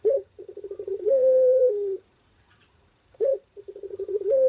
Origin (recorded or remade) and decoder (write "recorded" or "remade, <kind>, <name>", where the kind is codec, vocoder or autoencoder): remade, vocoder, Vocos